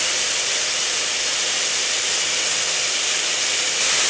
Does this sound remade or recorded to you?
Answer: recorded